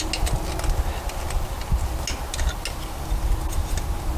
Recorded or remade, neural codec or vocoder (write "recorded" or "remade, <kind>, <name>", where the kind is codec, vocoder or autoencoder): recorded